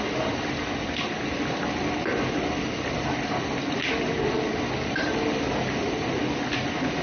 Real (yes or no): yes